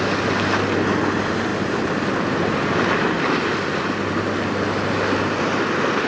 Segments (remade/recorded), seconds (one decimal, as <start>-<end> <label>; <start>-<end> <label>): 0.0-6.1 recorded